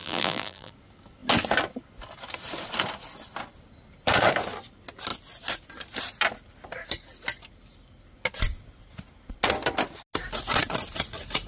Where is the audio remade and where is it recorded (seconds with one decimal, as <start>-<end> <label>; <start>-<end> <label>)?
0.0-0.7 remade; 0.7-11.5 recorded